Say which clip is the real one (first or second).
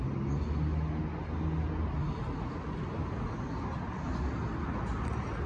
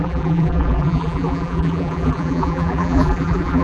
first